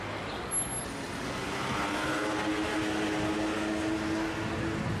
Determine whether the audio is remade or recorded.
recorded